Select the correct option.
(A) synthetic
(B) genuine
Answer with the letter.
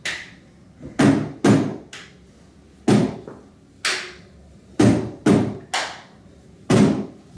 B